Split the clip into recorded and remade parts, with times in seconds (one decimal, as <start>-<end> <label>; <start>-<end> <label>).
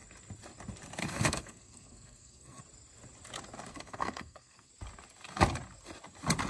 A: 0.0-1.0 recorded; 1.0-2.6 remade; 2.6-3.7 recorded; 3.7-4.7 remade; 4.7-6.5 recorded